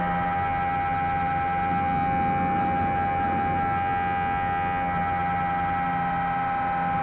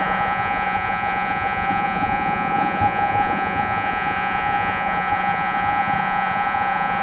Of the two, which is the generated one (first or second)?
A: second